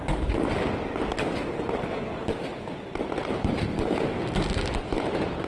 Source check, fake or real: real